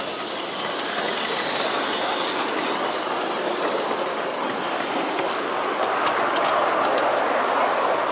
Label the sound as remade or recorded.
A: recorded